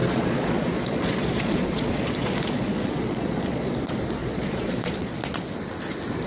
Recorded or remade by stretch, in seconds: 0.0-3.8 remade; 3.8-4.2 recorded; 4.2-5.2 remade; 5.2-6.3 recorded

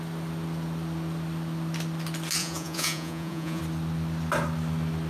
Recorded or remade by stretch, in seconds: 0.0-2.4 recorded; 2.4-3.6 remade; 3.6-5.1 recorded

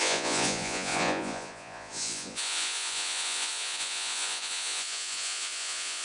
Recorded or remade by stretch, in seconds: 0.0-6.0 remade

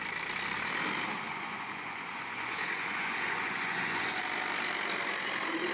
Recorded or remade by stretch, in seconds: 0.0-1.3 recorded; 1.3-4.2 remade; 4.2-5.7 recorded

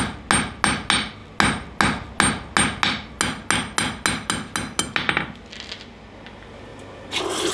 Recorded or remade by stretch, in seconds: 0.0-7.5 recorded

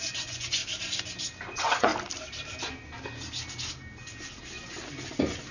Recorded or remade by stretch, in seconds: 0.0-0.6 remade; 0.6-1.5 recorded; 1.5-1.9 remade; 1.9-5.5 recorded

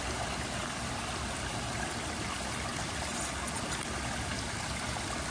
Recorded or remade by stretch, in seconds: 0.0-5.3 recorded

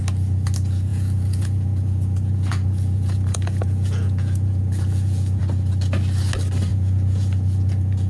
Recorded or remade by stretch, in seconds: 0.0-0.9 recorded; 0.9-5.4 remade; 5.4-6.7 recorded; 6.7-8.1 remade